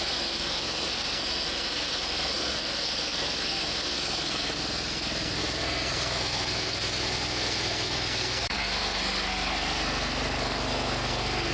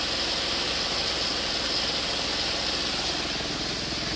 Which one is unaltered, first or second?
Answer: second